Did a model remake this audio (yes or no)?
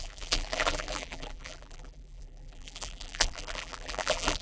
yes